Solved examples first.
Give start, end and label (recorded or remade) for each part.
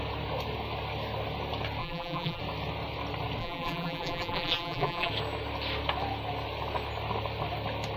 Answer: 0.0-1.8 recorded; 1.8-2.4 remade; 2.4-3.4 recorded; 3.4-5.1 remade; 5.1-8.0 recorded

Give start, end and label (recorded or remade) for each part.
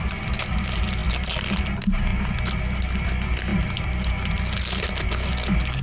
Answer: 0.0-5.8 recorded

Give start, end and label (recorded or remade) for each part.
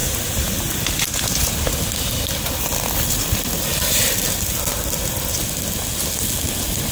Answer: 0.0-0.6 remade; 0.6-3.7 recorded; 3.7-4.7 remade; 4.7-6.9 recorded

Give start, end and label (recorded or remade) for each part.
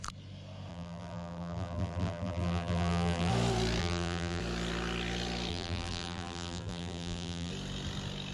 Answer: 0.0-0.7 recorded; 0.7-3.3 remade; 3.3-3.8 recorded; 3.8-4.4 remade; 4.4-5.5 recorded; 5.5-7.5 remade; 7.5-8.3 recorded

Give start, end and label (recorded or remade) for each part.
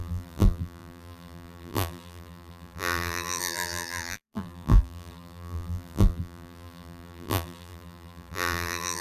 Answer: 0.0-9.0 remade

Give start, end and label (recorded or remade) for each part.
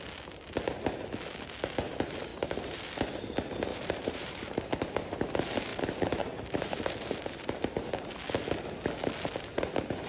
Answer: 0.0-2.3 recorded; 2.3-2.9 remade; 2.9-3.7 recorded; 3.7-4.6 remade; 4.6-5.7 recorded; 5.7-8.1 remade; 8.1-10.1 recorded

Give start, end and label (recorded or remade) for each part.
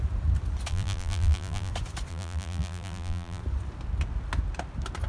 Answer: 0.0-0.7 recorded; 0.7-1.7 remade; 1.7-2.1 recorded; 2.1-3.4 remade; 3.4-5.1 recorded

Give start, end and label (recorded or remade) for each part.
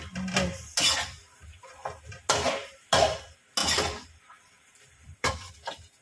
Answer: 0.0-1.2 recorded; 1.2-2.2 remade; 2.2-2.6 recorded; 2.6-3.2 remade; 3.2-3.6 recorded; 3.6-5.5 remade; 5.5-6.0 recorded